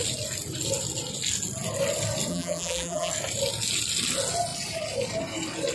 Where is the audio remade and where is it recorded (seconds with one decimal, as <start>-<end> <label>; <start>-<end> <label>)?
0.0-2.3 recorded; 2.3-3.1 remade; 3.1-5.7 recorded